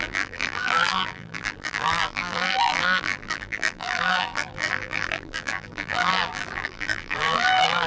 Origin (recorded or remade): remade